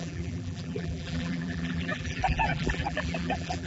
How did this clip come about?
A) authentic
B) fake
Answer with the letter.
B